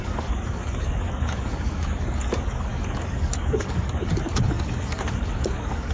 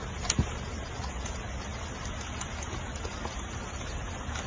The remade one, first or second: first